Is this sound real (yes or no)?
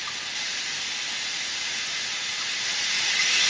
yes